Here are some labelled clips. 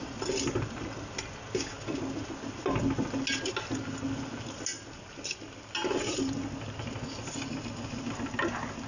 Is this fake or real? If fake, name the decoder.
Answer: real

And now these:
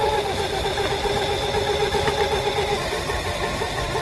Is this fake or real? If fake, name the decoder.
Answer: real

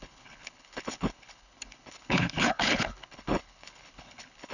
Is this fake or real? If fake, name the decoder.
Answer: fake, codec, HILCodec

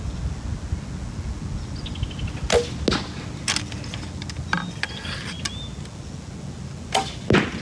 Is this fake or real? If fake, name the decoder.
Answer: real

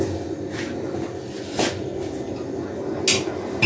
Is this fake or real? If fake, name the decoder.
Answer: real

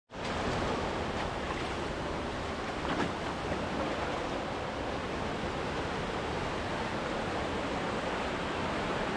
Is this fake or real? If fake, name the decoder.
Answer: real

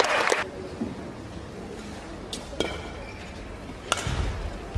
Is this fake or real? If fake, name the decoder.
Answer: real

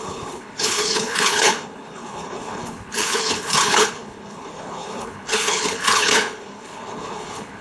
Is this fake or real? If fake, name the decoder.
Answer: fake, codec, HILCodec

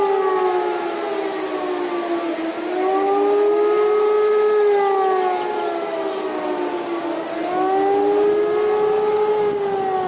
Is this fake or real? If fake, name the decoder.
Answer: real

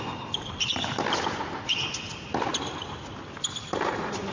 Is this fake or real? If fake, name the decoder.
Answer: real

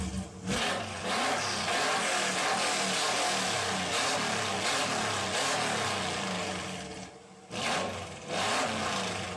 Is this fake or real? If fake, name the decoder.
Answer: real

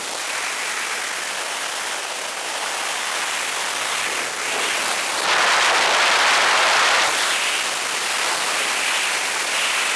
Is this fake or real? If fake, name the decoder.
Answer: real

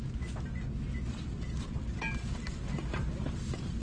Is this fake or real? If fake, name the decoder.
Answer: real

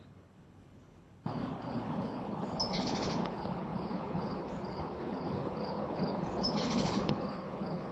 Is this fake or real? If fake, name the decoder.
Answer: fake, codec, HILCodec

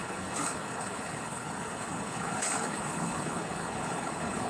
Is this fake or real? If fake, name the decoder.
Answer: fake, codec, HILCodec